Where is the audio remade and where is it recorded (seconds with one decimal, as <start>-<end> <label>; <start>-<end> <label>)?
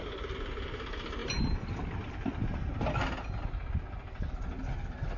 0.0-5.2 recorded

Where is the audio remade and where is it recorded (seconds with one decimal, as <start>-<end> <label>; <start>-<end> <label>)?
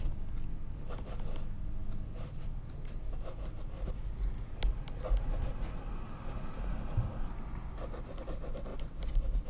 0.0-9.5 recorded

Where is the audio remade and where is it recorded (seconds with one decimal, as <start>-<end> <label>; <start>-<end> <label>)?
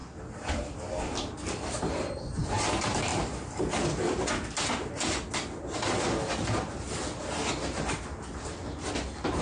0.0-9.4 recorded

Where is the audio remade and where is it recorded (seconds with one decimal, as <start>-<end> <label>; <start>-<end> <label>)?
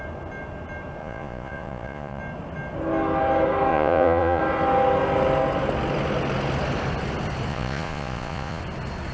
0.0-1.0 recorded; 1.0-2.2 remade; 2.2-3.7 recorded; 3.7-4.4 remade; 4.4-7.5 recorded; 7.5-8.6 remade; 8.6-9.1 recorded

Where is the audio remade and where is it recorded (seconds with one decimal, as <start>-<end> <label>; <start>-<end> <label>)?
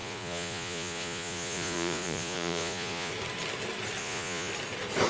0.0-3.1 remade; 3.1-4.0 recorded; 4.0-4.5 remade; 4.5-5.1 recorded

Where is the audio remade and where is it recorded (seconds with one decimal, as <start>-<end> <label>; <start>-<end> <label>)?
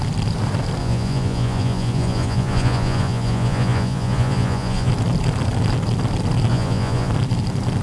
0.0-0.8 recorded; 0.8-4.9 remade; 4.9-6.5 recorded; 6.5-7.1 remade; 7.1-7.8 recorded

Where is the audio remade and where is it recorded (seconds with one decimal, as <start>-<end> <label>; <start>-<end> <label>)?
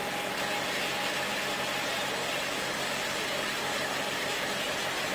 0.0-5.1 recorded